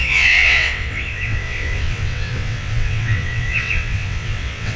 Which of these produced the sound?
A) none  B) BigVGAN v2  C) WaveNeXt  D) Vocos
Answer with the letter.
C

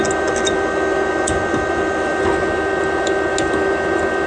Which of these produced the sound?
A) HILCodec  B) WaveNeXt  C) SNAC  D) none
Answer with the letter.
D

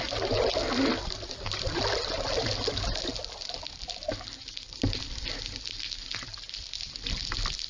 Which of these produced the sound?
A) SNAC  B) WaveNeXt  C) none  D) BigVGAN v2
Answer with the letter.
C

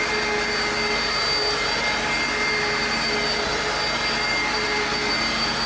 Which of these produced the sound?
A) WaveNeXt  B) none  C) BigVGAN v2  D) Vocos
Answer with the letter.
B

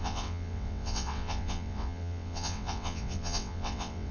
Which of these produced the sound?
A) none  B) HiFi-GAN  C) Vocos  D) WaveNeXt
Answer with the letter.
D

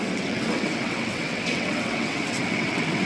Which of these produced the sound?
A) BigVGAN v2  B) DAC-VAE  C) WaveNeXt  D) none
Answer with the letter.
C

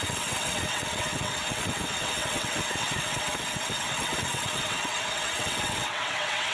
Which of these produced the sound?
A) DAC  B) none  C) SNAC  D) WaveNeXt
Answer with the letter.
D